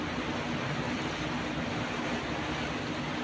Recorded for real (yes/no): yes